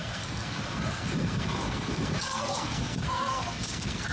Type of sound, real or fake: fake